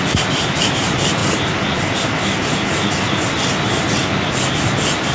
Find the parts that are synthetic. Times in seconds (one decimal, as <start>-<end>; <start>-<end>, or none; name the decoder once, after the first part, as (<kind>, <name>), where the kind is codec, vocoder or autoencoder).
none